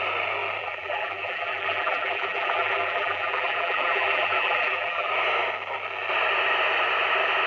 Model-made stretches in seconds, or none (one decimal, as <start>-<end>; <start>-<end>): 0.6-5.1